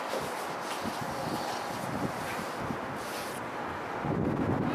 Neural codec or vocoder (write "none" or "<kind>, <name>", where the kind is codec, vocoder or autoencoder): none